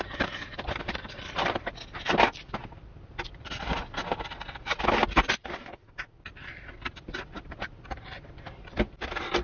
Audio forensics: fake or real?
real